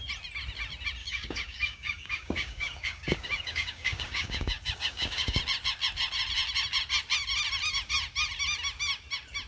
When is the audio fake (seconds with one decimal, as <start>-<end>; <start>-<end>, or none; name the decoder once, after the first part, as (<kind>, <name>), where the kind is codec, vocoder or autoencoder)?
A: 1.0-5.4 (codec, DAC)